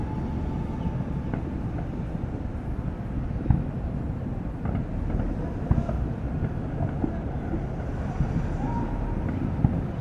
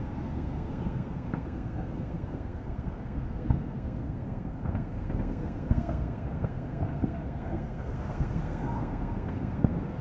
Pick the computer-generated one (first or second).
second